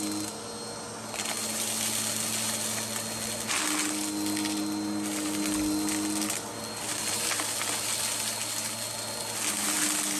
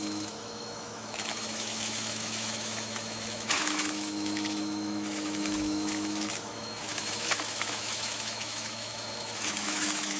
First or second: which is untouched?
first